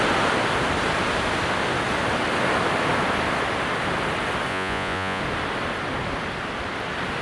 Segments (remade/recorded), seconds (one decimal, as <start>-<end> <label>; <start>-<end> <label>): 0.0-4.5 recorded; 4.5-5.2 remade; 5.2-7.2 recorded